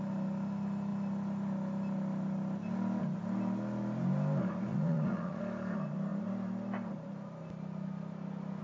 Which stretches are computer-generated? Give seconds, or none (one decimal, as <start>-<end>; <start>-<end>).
4.7-5.4